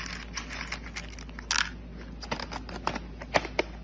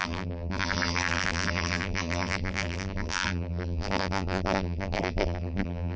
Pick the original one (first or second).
first